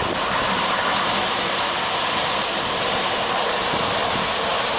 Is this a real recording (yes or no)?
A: yes